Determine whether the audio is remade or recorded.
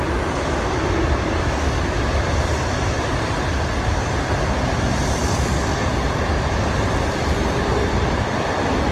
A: recorded